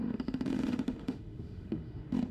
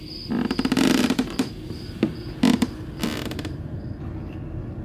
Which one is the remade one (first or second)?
first